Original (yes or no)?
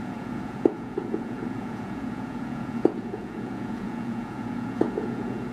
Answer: no